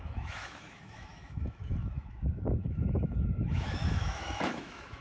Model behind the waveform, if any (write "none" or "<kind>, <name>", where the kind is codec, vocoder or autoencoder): autoencoder, DAC-VAE